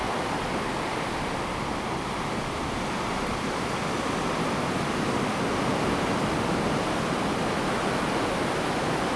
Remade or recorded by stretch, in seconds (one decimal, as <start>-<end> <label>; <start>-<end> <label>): 0.0-9.2 recorded